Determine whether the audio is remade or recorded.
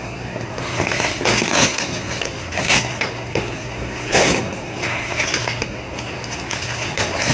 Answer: remade